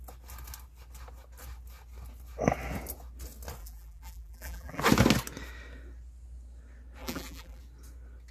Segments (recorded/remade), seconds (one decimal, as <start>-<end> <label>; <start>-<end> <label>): 0.0-3.6 recorded; 3.6-4.8 remade; 4.8-7.0 recorded; 7.0-7.6 remade; 7.6-8.3 recorded